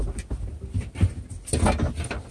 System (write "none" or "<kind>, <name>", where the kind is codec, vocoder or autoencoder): none